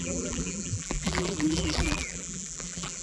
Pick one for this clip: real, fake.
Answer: fake